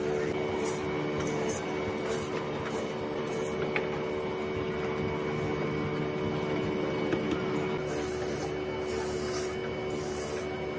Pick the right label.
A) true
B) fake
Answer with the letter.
A